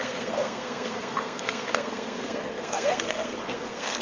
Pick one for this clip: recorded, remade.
remade